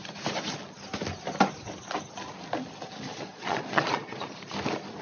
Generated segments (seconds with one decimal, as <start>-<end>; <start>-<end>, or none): 3.1-4.5